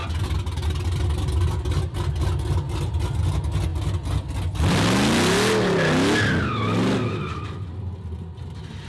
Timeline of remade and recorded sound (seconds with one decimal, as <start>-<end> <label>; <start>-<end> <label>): 0.0-8.9 recorded